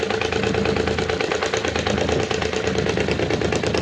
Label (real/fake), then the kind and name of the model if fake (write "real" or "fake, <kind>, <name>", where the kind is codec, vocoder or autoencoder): real